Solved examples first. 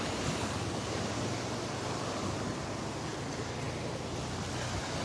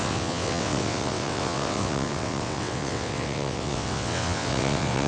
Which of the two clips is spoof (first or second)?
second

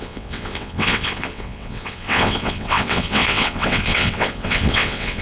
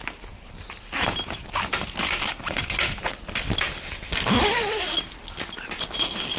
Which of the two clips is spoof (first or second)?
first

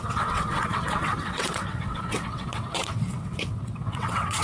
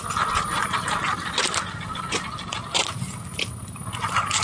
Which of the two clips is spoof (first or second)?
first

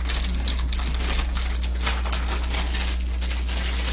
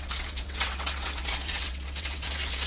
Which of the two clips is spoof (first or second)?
second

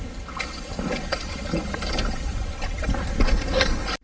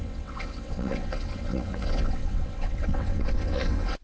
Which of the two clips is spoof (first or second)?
second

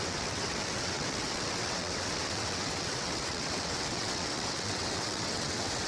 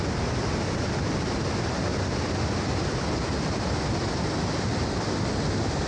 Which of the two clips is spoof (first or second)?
first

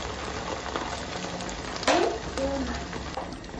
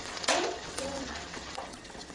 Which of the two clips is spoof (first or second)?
second